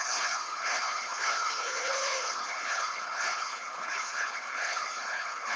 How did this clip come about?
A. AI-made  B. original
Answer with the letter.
A